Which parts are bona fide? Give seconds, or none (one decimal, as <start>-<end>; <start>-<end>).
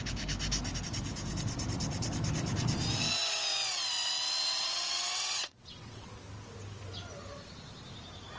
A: 0.0-4.5; 6.1-8.4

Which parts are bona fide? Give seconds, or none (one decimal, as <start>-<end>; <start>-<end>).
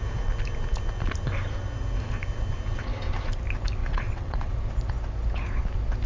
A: 0.0-3.8; 4.5-6.1